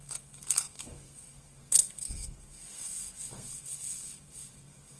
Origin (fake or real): fake